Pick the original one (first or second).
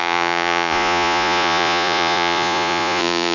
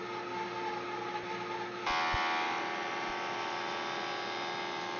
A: second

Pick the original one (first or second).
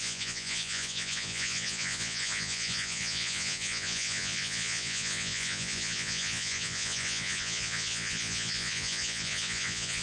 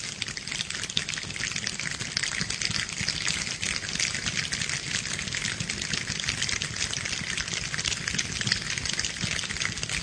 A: second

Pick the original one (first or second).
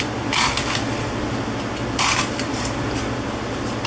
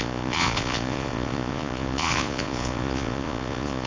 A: first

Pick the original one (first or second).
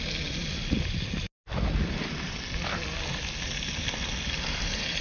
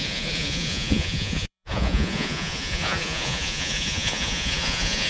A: first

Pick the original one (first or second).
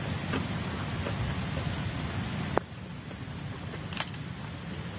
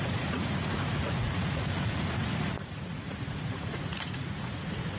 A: first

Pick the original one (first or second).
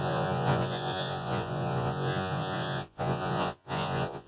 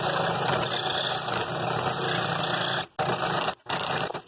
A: second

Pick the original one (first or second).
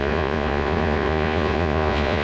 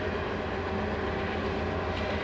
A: second